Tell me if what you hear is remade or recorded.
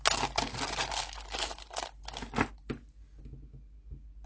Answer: recorded